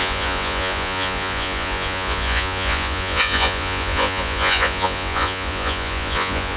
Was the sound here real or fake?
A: fake